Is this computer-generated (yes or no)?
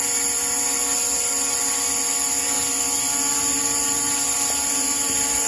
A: no